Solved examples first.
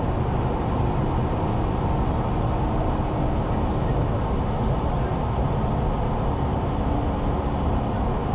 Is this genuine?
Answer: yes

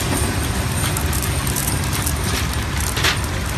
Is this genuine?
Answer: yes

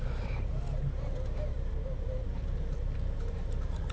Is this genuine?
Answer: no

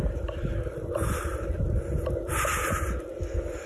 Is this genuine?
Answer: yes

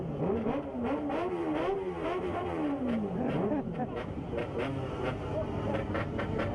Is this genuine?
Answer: no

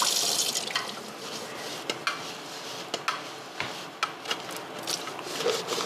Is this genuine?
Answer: yes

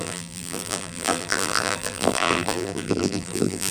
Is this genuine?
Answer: no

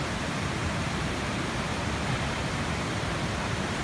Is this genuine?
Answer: no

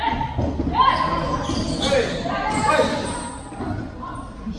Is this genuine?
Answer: yes